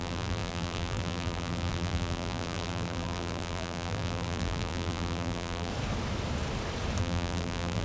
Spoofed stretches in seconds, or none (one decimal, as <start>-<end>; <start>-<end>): 0.0-5.7; 7.0-7.8